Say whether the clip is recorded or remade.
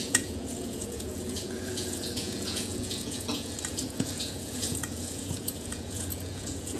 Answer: remade